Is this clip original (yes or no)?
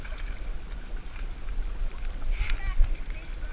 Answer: yes